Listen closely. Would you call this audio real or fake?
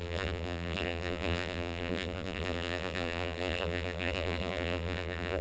fake